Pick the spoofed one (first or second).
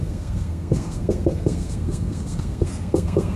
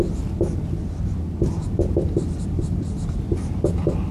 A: first